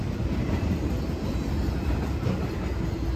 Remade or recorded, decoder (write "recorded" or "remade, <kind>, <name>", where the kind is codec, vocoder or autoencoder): recorded